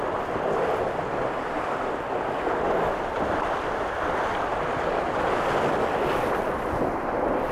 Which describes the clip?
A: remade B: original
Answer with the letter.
B